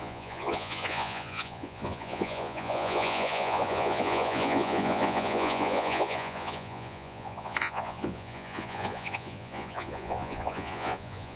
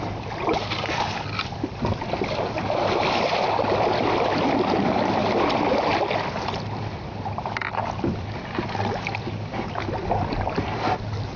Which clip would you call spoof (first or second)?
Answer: first